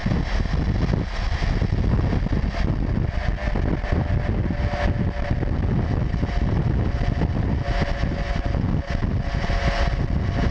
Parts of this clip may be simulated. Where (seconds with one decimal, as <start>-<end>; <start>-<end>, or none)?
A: none